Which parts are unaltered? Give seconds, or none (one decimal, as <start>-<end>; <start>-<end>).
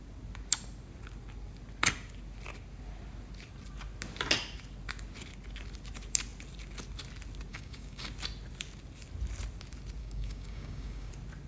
0.0-7.5; 8.1-10.0; 11.1-11.5